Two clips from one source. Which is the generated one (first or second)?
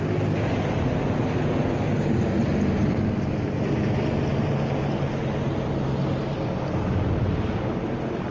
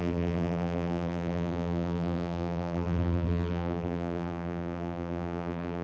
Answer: second